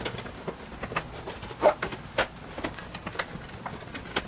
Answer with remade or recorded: recorded